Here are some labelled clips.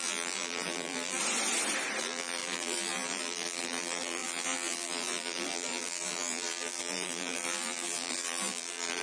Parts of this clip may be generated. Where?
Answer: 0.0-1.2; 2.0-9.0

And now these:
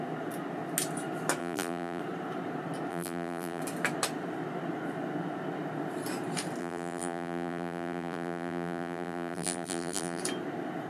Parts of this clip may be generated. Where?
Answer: 1.4-2.0; 2.9-3.6; 6.6-10.2

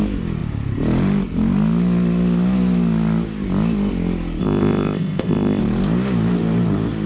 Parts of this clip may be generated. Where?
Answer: 4.4-5.6

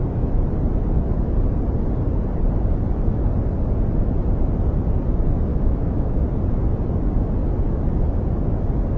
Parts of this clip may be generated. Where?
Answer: 5.5-6.2

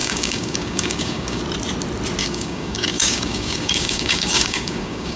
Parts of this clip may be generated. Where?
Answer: 0.0-1.4; 2.2-5.2